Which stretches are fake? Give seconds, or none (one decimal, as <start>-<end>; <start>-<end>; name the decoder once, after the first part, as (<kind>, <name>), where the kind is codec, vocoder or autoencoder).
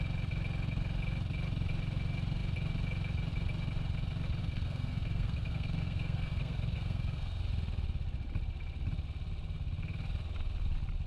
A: 4.4-7.4 (codec, SNAC)